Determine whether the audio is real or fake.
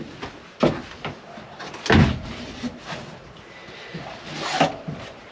real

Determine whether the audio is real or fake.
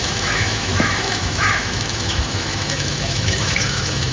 fake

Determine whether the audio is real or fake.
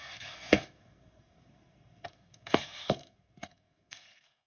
fake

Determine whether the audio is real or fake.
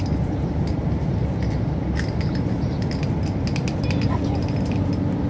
real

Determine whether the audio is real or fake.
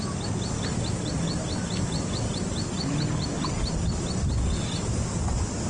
real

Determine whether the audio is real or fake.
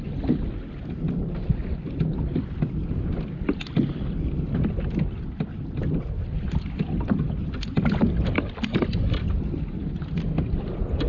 real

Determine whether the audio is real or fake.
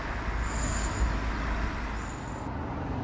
real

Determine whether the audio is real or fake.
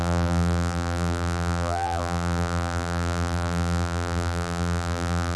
fake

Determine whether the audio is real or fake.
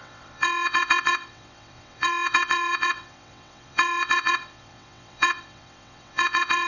fake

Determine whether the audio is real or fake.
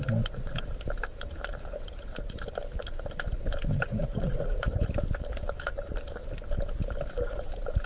fake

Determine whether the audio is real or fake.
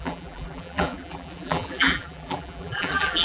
fake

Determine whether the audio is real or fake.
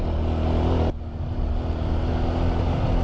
real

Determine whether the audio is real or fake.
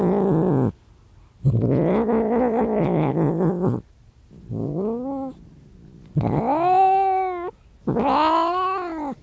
real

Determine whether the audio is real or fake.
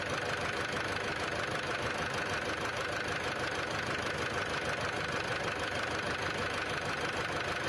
real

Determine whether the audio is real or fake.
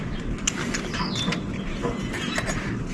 real